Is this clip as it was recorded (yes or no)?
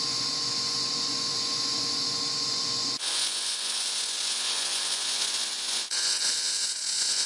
no